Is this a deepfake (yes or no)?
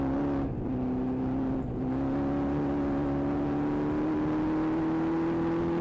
no